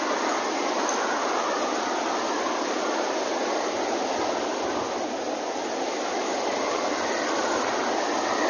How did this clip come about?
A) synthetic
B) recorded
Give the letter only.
B